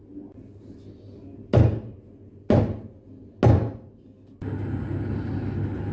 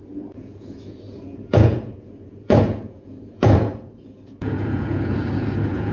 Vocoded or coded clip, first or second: second